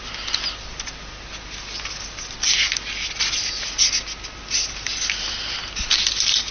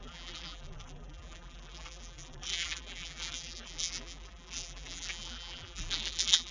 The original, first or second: first